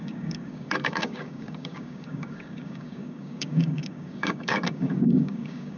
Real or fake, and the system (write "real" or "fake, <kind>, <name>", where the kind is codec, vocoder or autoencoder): fake, codec, DAC